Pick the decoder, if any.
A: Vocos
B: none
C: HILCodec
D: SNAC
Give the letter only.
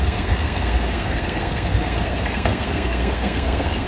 D